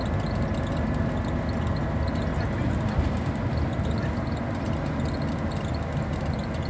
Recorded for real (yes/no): yes